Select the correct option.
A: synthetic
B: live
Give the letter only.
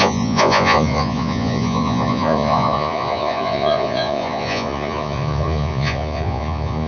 A